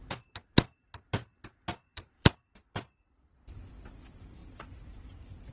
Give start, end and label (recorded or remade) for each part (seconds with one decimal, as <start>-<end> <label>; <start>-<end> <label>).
0.0-1.9 recorded; 1.9-3.9 remade; 3.9-4.4 recorded; 4.4-5.5 remade